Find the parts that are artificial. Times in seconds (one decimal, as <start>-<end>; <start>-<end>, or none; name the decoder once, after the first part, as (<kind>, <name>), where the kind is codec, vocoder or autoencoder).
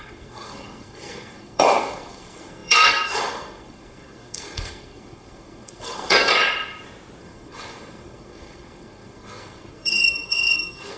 0.0-6.3 (codec, SNAC); 7.2-11.0